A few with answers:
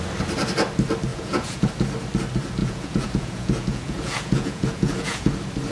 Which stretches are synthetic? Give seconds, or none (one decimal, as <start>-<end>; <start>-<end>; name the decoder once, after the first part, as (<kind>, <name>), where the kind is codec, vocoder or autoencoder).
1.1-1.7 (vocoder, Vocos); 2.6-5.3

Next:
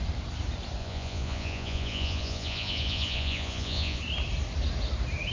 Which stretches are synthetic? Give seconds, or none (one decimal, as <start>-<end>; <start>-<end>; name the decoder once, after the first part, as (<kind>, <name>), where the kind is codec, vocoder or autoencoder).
0.8-4.0 (vocoder, Vocos)

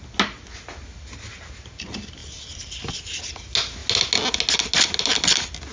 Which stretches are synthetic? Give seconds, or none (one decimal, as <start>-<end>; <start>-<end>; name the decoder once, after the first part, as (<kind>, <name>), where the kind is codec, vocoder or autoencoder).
none

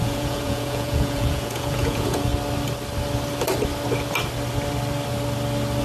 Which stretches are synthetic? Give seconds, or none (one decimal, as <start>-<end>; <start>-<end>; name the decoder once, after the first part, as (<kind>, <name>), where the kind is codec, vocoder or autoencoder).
0.0-2.3 (vocoder, Vocos)